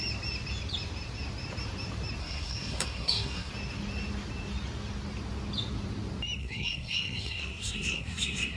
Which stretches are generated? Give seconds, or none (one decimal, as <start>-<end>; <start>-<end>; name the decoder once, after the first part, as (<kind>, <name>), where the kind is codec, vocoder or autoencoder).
2.2-3.5 (codec, SNAC); 6.4-8.6